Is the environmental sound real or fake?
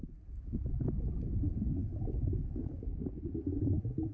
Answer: real